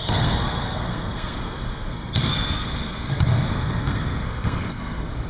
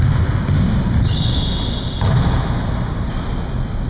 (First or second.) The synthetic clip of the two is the first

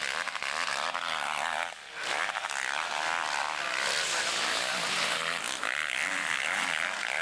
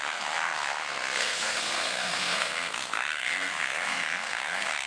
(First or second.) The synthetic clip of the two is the second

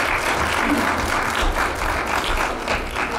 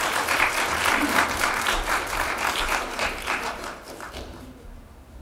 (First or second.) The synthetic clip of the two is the second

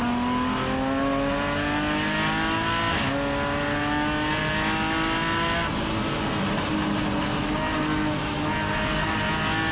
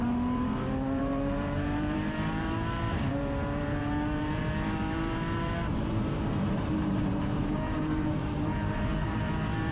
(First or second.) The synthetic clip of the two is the second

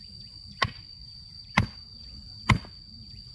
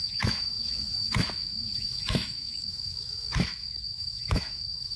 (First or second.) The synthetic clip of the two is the second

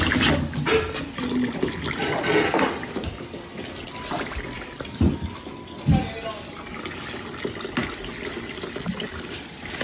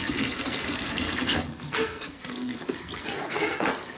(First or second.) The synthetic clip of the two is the second